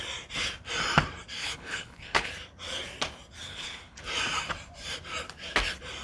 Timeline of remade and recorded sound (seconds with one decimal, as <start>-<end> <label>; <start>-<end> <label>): 0.0-1.4 recorded; 1.4-2.3 remade; 2.3-3.4 recorded; 3.4-4.0 remade; 4.0-6.0 recorded